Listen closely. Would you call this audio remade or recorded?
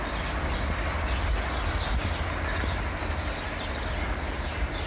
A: recorded